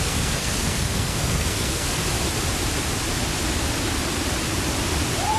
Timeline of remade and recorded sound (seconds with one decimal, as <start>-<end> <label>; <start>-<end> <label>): 0.0-2.0 remade; 2.0-5.4 recorded